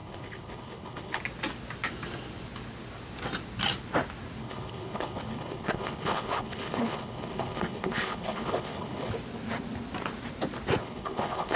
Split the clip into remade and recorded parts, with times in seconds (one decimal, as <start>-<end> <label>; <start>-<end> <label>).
0.0-1.2 remade; 1.2-4.4 recorded; 4.4-9.1 remade; 9.1-10.8 recorded; 10.8-11.6 remade